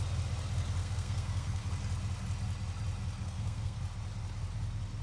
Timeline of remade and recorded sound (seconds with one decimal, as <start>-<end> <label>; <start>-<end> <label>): 0.0-0.8 recorded; 0.8-1.6 remade; 1.6-3.2 recorded; 3.2-3.8 remade; 3.8-5.0 recorded